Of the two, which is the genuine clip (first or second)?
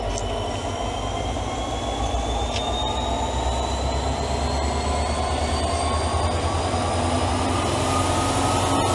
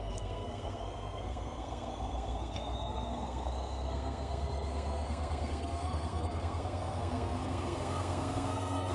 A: first